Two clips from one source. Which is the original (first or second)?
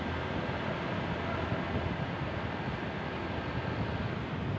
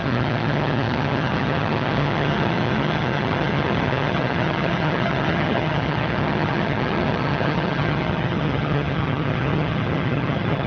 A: first